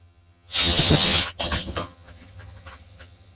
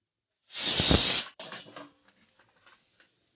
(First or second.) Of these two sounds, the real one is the second